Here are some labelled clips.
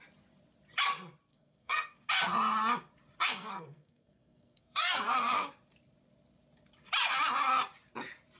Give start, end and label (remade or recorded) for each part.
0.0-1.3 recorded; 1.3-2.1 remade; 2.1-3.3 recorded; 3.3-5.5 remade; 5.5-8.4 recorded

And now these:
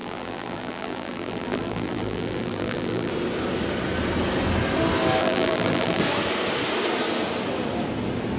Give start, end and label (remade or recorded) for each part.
0.0-3.1 remade; 3.1-5.2 recorded; 5.2-6.0 remade; 6.0-8.4 recorded

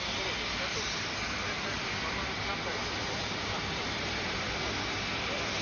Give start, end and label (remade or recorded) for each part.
0.0-2.8 recorded; 2.8-4.4 remade; 4.4-5.6 recorded

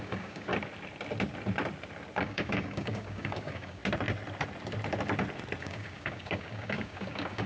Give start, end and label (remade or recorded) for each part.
0.0-0.5 remade; 0.5-2.2 recorded; 2.2-3.8 remade; 3.8-5.6 recorded; 5.6-7.5 remade